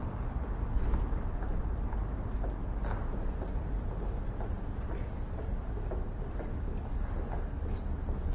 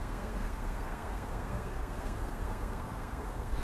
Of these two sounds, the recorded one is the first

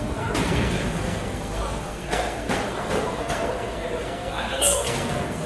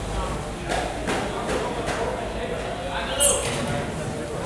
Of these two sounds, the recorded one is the second